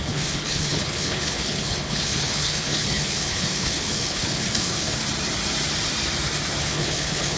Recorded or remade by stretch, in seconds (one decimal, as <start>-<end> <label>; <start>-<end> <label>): 0.0-5.0 remade; 5.0-6.6 recorded; 6.6-7.4 remade